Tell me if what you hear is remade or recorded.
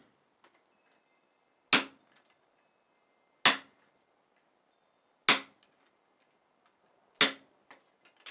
recorded